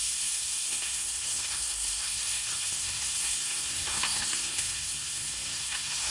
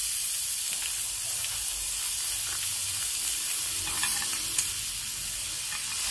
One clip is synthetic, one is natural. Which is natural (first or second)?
second